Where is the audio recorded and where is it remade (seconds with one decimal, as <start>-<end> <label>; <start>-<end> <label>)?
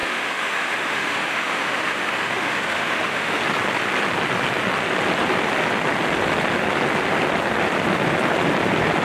0.0-3.4 remade; 3.4-9.0 recorded